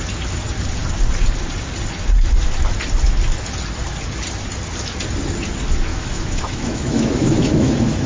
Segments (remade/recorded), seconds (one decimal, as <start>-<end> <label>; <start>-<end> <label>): 0.0-5.9 recorded; 5.9-8.1 remade